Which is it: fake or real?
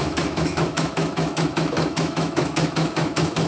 fake